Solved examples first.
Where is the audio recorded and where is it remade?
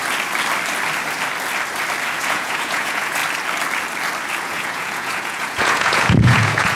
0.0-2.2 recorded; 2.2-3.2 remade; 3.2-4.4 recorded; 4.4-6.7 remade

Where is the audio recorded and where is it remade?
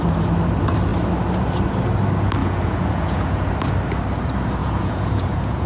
0.0-2.4 recorded; 2.4-3.5 remade; 3.5-4.6 recorded; 4.6-5.7 remade